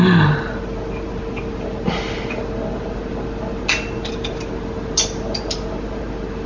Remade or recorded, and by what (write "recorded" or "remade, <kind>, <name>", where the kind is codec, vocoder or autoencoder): recorded